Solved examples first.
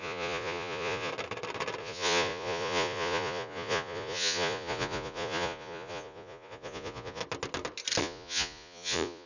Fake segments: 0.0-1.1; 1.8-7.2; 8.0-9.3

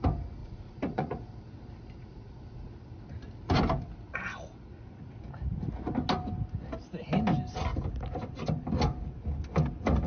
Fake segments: 0.4-1.3; 2.0-2.7

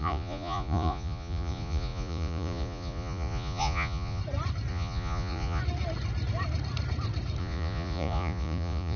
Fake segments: 0.0-4.2; 4.7-5.6; 7.4-9.0

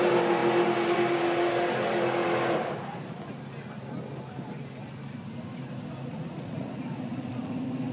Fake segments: 6.1-7.5

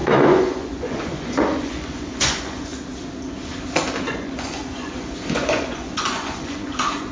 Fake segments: 0.0-2.7; 4.1-7.1